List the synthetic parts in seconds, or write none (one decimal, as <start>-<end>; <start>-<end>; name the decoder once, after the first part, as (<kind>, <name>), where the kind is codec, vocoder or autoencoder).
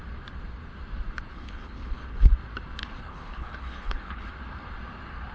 1.3-2.3 (codec, HILCodec); 2.8-4.3